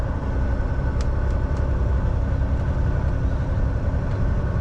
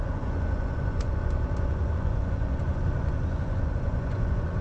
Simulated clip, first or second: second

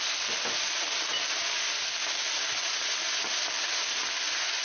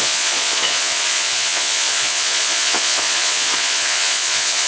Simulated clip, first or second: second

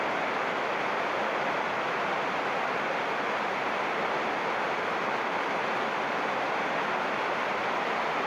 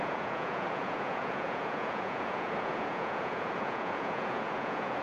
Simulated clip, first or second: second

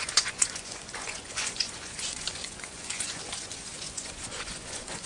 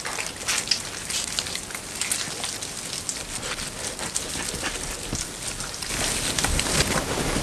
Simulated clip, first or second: first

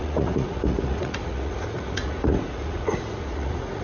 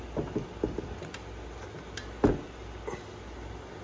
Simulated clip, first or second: first